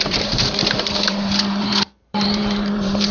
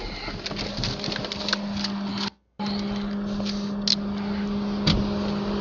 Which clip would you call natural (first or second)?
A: second